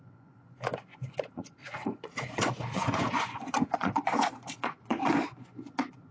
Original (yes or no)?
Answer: no